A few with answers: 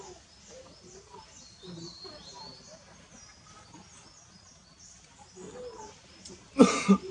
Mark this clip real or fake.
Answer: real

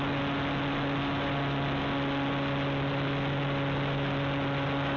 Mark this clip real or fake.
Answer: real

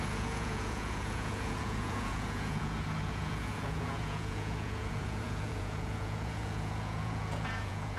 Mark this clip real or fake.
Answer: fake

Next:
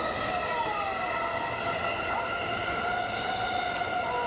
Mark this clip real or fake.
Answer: real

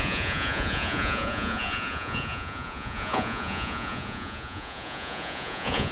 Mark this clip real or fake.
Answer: fake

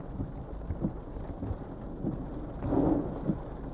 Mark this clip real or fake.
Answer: real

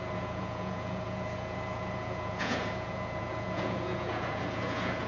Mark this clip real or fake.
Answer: fake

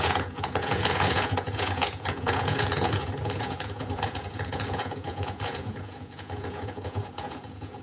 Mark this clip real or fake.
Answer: fake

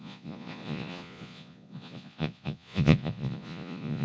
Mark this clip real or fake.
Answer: fake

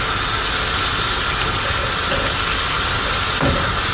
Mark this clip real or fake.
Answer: real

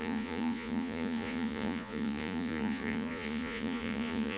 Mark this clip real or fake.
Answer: fake